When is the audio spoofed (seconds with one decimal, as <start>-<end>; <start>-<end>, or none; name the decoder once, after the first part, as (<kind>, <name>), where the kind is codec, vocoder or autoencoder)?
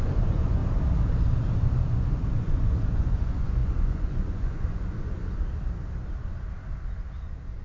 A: 0.0-0.6 (vocoder, Vocos); 1.8-5.2